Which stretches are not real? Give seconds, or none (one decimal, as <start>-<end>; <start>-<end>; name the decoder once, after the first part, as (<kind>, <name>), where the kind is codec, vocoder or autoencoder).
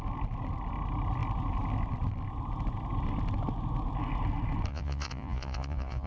4.7-6.1 (vocoder, Vocos)